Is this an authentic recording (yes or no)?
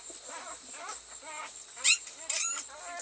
yes